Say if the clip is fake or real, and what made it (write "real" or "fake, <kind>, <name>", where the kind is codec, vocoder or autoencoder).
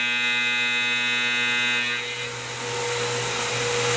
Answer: real